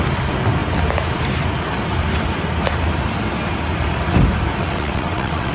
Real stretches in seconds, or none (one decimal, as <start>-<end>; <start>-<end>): 0.0-4.6